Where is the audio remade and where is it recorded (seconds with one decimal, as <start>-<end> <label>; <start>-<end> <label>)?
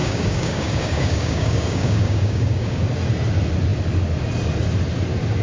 0.0-2.8 remade; 2.8-5.4 recorded